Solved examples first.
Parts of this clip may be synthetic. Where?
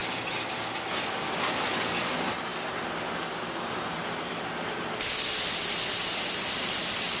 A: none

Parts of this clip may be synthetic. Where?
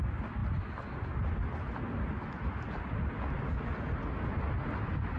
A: none